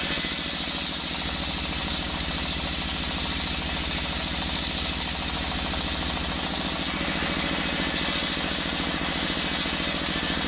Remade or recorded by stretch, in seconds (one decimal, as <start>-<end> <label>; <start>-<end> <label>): 0.0-1.8 recorded; 1.8-2.3 remade; 2.3-10.5 recorded